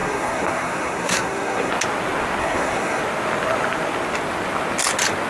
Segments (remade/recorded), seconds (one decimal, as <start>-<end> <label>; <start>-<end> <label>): 0.0-1.7 remade; 1.7-2.4 recorded; 2.4-3.0 remade; 3.0-5.3 recorded